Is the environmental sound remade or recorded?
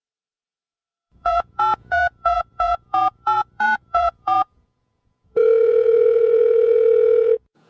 remade